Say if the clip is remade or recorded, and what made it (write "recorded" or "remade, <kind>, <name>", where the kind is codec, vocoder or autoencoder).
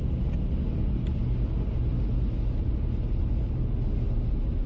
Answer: recorded